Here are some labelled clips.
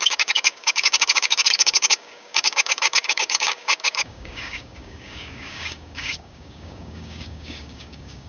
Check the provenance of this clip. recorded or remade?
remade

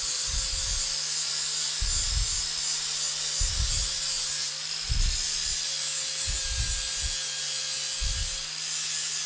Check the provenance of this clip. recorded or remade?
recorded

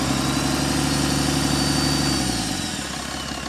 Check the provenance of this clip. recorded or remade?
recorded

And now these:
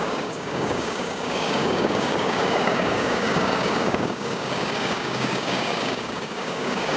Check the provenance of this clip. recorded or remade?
remade